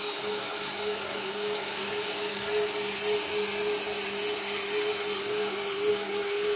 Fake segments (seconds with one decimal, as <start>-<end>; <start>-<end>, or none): 0.0-2.5; 5.9-6.6